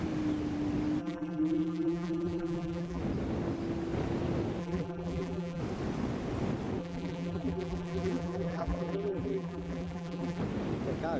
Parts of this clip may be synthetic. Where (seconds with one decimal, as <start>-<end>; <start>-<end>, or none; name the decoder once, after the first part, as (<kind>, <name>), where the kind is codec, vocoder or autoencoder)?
1.0-3.0 (vocoder, BigVGAN v2); 4.6-5.6; 6.8-10.4